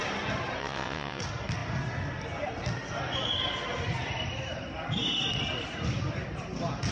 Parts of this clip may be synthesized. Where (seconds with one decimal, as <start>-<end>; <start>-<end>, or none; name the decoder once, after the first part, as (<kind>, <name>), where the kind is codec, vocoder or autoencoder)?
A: 0.6-1.2 (vocoder, WaveNeXt)